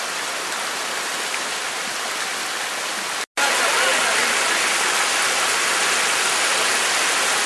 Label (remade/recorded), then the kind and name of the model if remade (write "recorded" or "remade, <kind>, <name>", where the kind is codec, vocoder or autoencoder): recorded